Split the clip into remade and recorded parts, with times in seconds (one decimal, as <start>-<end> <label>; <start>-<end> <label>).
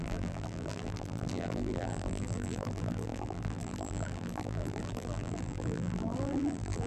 0.0-6.9 remade